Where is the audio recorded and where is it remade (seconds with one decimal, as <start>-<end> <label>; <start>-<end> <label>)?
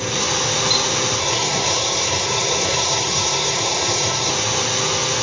0.0-1.2 recorded; 1.2-4.3 remade; 4.3-5.2 recorded